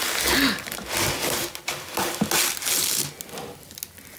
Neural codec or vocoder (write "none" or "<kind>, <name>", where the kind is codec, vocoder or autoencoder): none